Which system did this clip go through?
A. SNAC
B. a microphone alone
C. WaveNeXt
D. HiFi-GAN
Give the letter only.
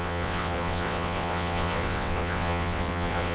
C